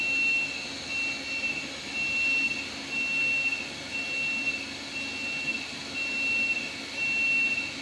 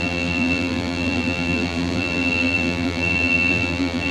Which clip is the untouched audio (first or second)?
first